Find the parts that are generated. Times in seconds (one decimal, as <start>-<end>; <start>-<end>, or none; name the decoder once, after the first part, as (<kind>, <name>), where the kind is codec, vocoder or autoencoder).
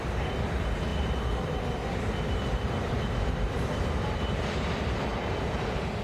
0.0-5.1 (vocoder, BigVGAN v2)